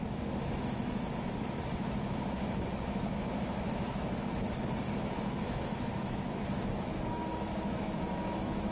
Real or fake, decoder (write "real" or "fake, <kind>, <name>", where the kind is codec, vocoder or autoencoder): fake, autoencoder, DAC-VAE